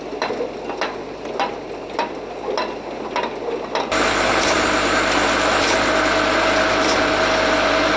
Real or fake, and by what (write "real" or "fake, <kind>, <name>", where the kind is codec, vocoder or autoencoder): real